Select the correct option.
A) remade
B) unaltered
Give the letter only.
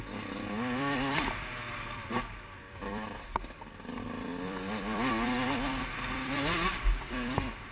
A